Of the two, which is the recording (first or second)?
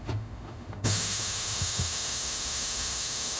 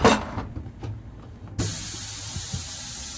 second